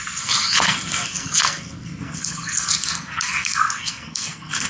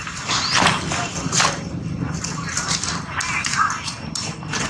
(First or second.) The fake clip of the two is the first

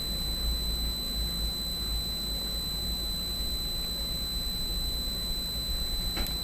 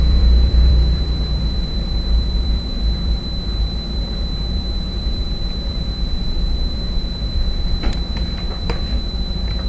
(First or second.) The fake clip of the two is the second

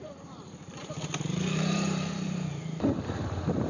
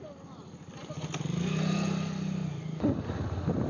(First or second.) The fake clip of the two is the first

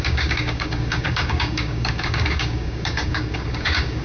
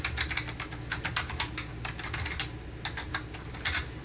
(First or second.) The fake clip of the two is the first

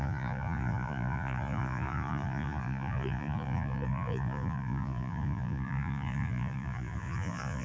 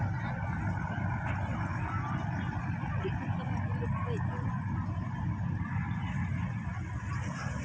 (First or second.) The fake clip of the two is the first